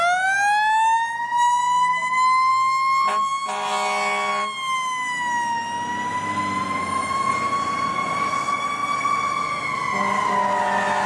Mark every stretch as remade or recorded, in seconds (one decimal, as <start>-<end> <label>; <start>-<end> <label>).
0.0-6.8 recorded; 6.8-7.3 remade; 7.3-11.1 recorded